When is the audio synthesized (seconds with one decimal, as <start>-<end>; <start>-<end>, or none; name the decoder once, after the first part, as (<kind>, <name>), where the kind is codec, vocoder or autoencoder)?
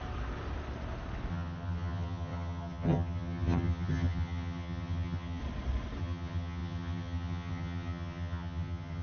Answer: 1.3-5.4 (vocoder, HiFi-GAN); 6.0-9.0